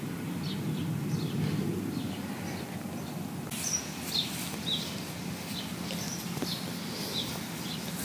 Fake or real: real